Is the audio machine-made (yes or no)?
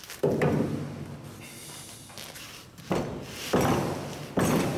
no